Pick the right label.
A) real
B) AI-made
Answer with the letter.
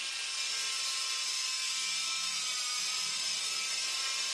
A